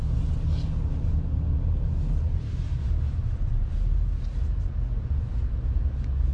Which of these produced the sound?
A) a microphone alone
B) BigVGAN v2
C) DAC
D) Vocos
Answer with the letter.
A